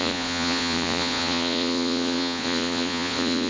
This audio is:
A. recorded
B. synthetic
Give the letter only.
B